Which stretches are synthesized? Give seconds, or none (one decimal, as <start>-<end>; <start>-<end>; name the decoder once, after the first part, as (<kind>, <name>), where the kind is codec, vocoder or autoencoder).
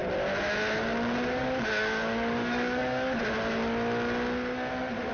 1.4-3.2 (codec, DAC)